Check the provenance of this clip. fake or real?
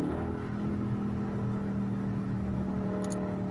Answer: real